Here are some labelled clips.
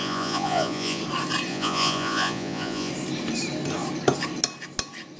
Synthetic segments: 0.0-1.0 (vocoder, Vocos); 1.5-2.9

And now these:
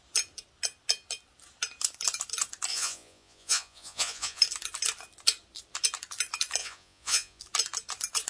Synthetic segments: 2.7-4.4 (vocoder, Vocos); 6.6-7.4

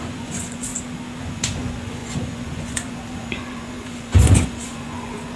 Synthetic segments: 0.0-0.7 (vocoder, Vocos); 1.2-5.4

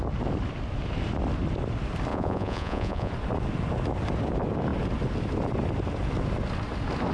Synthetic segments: 2.1-3.1 (vocoder, Vocos)

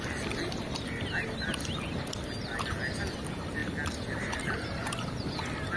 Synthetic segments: none

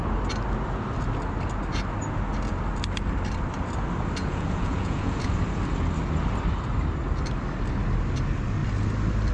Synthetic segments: 4.2-5.3 (vocoder, Vocos)

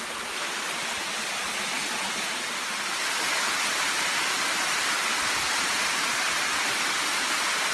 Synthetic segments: none